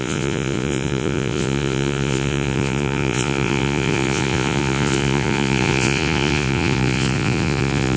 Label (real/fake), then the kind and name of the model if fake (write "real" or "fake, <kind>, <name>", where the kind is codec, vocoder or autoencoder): fake, vocoder, Vocos